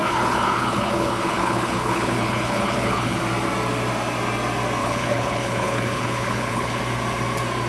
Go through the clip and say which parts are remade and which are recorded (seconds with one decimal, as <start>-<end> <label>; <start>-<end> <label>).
0.0-3.2 remade; 3.2-4.8 recorded; 4.8-6.8 remade; 6.8-7.7 recorded